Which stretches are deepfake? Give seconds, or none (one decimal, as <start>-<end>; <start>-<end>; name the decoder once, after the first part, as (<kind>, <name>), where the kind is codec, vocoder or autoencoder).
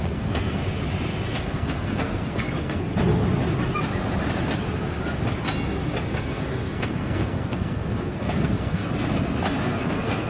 0.0-0.6 (codec, SNAC); 1.4-2.9; 6.2-8.8; 9.8-10.3